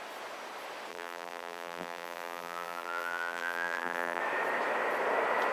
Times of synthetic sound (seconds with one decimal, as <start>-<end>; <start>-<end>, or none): 0.9-4.2